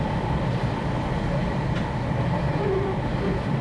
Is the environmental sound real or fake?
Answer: fake